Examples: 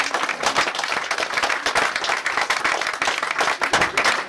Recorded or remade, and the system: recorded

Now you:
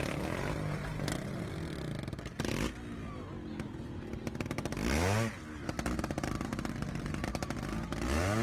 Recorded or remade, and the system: recorded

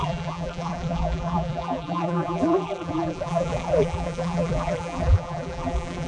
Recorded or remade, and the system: remade, vocoder, BigVGAN v2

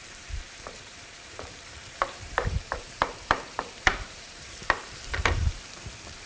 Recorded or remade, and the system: remade, vocoder, BigVGAN v2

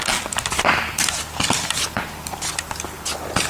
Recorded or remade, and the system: recorded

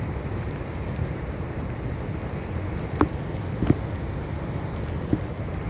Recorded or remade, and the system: recorded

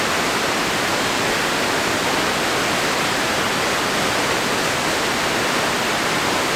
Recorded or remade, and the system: recorded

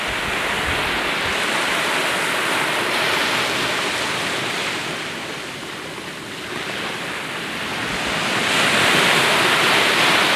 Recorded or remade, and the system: recorded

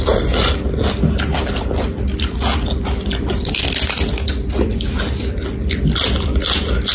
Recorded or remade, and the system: recorded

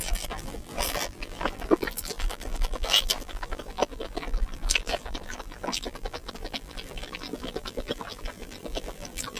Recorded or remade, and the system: remade, vocoder, BigVGAN v2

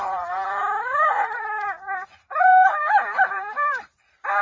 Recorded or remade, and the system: remade, vocoder, BigVGAN v2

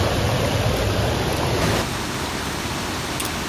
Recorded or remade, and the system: recorded